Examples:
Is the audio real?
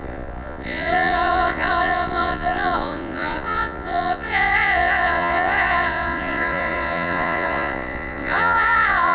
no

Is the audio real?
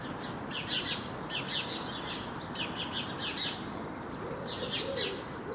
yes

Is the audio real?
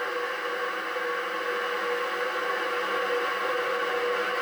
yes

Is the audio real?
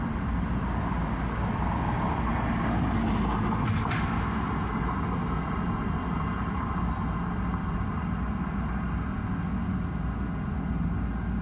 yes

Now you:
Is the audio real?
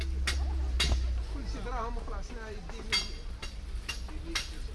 yes